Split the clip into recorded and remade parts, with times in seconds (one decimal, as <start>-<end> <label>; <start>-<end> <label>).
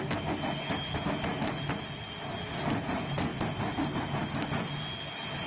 0.0-5.5 recorded